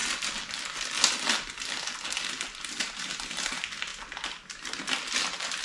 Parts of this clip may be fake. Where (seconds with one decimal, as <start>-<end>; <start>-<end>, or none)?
none